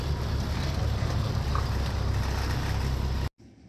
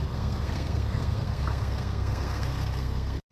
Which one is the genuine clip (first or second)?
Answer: first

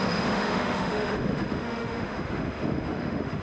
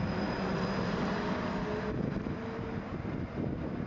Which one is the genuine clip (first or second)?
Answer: second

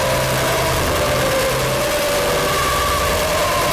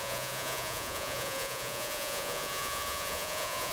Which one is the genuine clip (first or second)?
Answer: first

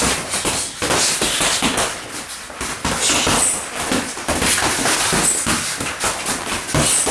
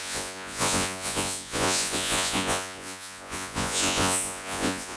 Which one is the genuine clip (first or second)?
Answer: first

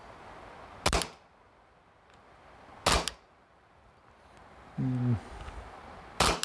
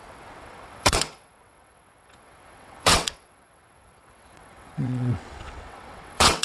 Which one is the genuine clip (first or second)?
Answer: first